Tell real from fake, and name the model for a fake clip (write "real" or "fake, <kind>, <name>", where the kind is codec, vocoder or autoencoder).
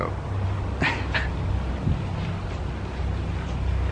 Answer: real